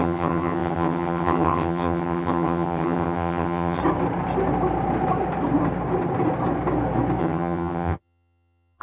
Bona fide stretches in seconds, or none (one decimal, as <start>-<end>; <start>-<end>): 3.8-7.2